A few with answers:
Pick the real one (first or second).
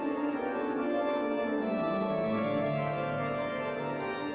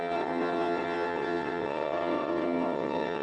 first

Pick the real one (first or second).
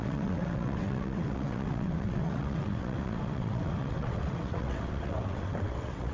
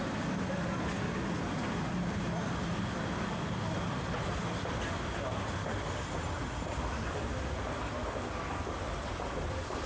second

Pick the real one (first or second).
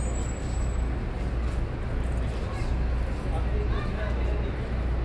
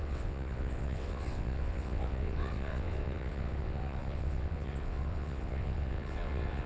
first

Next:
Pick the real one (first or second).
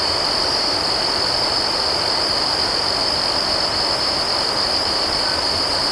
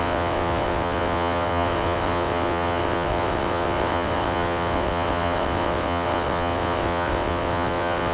first